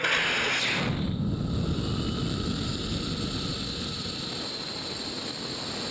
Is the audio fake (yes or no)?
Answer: no